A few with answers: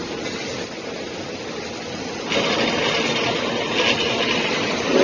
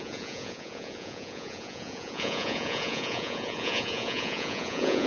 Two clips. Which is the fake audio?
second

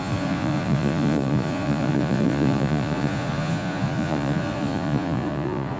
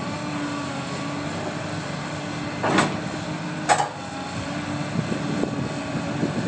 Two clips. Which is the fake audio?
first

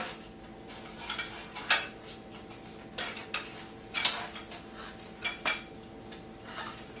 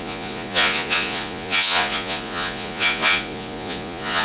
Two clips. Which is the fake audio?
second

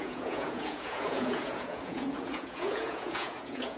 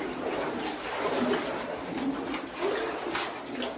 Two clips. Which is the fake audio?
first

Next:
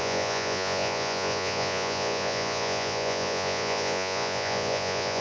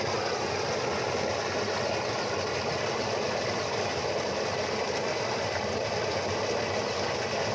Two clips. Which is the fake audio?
first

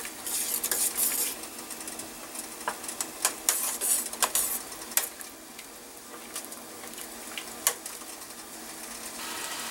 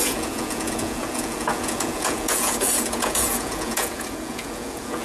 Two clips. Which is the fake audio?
second